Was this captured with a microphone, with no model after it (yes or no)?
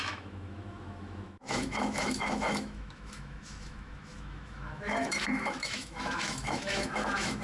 no